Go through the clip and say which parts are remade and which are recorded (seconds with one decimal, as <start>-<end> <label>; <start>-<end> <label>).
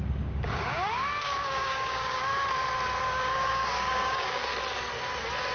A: 0.0-2.3 remade; 2.3-3.0 recorded; 3.0-4.5 remade; 4.5-5.5 recorded